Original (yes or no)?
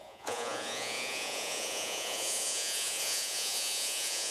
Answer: no